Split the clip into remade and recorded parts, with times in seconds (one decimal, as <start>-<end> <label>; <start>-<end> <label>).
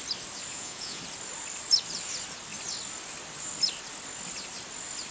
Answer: 0.0-0.5 recorded; 0.5-1.0 remade; 1.0-5.1 recorded